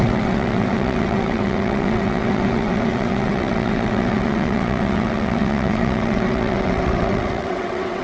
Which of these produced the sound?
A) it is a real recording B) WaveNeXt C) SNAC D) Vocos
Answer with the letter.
B